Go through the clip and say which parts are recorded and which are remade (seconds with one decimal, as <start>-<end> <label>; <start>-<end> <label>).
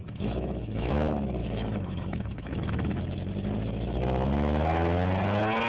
0.0-0.9 remade; 0.9-1.4 recorded; 1.4-3.0 remade; 3.0-5.7 recorded